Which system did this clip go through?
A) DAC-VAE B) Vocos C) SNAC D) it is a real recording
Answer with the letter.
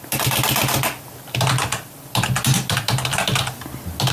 D